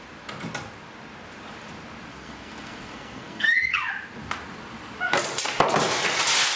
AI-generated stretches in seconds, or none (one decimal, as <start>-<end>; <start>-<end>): 2.1-3.9